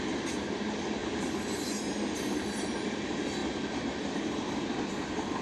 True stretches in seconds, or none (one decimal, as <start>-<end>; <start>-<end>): 0.0-1.0; 1.5-3.4; 4.5-5.4